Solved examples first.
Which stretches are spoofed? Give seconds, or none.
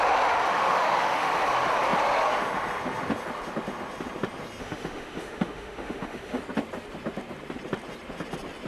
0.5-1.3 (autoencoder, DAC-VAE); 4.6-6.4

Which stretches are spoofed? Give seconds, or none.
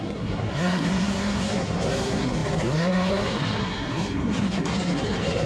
0.0-5.5 (codec, SNAC)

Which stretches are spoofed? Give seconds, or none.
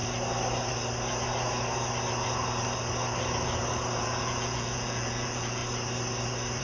4.0-5.6 (vocoder, Vocos)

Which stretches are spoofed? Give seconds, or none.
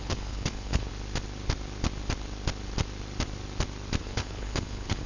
0.0-0.9 (codec, HILCodec); 4.0-5.1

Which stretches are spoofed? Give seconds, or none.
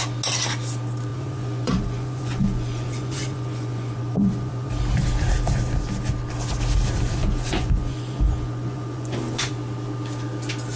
1.1-4.7 (vocoder, Vocos); 7.2-9.5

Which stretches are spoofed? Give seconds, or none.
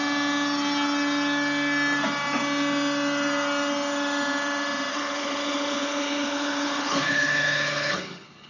4.9-8.5 (codec, HILCodec)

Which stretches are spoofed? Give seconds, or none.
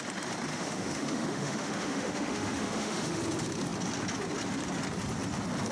0.5-3.2 (autoencoder, DAC-VAE)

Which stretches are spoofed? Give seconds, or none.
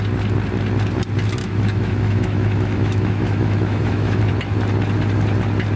1.4-4.2 (autoencoder, DAC-VAE)